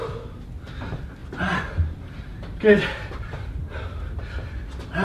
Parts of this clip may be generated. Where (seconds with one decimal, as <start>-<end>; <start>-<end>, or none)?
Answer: 1.2-4.2